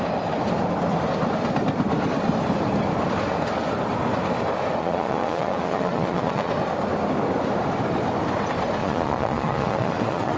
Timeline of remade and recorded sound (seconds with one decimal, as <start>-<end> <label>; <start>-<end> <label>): 0.0-4.8 recorded; 4.8-6.5 remade; 6.5-8.8 recorded; 8.8-10.4 remade